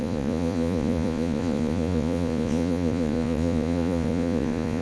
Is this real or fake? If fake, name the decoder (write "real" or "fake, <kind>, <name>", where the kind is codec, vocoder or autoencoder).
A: fake, vocoder, Vocos